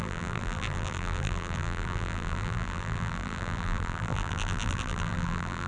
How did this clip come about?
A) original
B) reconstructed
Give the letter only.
B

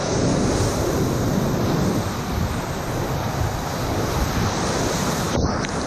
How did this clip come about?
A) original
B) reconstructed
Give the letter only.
A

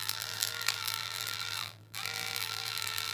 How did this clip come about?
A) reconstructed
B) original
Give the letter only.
A